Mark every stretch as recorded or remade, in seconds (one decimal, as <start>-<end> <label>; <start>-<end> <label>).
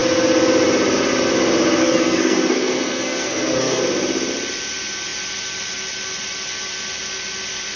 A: 0.0-1.8 recorded; 1.8-3.8 remade; 3.8-7.8 recorded